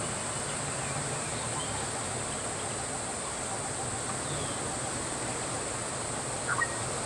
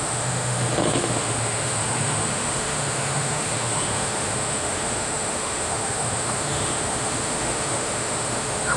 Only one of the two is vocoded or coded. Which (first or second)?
second